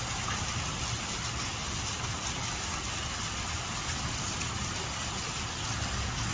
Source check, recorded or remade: recorded